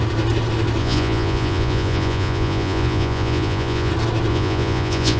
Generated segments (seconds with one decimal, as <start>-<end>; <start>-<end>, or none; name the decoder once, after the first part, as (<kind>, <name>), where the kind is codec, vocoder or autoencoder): 0.8-3.9 (vocoder, Vocos); 4.3-5.2